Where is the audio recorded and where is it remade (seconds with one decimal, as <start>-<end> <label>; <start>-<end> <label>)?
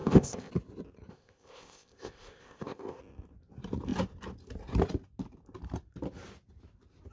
0.0-0.5 remade; 0.5-1.1 recorded; 1.1-3.0 remade; 3.0-7.1 recorded